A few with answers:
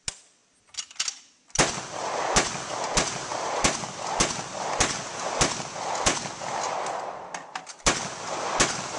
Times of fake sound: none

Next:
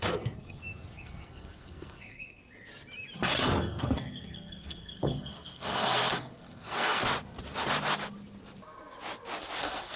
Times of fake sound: 0.0-2.4 (codec, SNAC); 3.6-7.0; 9.6-10.0